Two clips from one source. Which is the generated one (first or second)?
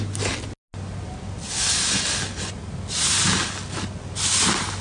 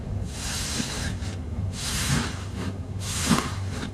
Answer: second